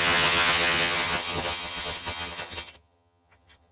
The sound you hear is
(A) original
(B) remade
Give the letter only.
B